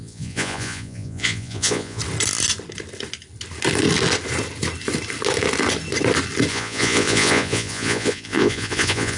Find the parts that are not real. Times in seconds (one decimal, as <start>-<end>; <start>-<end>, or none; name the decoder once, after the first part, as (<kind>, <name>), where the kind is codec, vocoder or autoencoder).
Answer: 0.0-2.0 (vocoder, Vocos); 6.5-9.2